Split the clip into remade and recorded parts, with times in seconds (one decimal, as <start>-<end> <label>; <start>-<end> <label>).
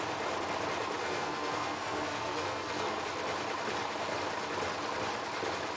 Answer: 0.0-1.0 recorded; 1.0-3.0 remade; 3.0-5.8 recorded